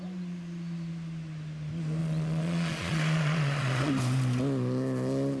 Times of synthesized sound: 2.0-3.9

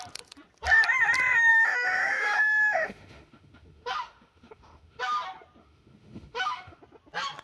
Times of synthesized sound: 1.5-5.0; 5.6-6.8

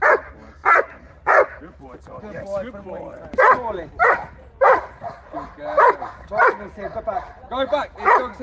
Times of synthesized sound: 0.6-2.2; 5.0-6.2

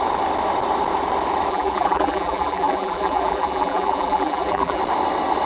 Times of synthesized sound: 1.5-4.8